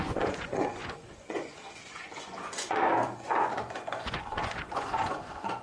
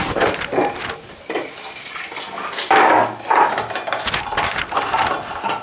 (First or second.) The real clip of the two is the second